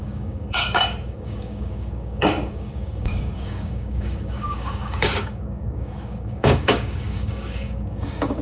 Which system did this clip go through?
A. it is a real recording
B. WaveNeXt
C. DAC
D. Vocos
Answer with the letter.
C